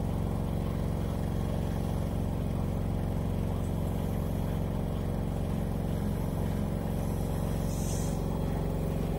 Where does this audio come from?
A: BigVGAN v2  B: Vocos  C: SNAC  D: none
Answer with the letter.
A